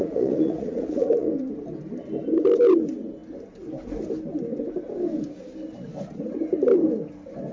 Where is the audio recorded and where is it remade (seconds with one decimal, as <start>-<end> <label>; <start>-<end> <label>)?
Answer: 0.0-1.3 remade; 1.3-7.5 recorded